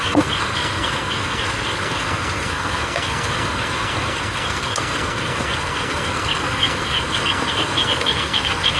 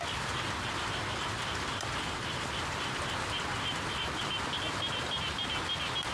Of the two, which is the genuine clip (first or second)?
second